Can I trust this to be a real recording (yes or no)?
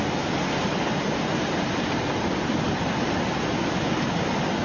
yes